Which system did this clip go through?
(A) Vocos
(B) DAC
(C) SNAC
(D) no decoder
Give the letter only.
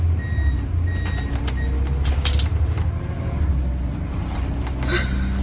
D